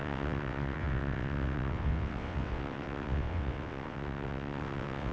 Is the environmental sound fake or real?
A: fake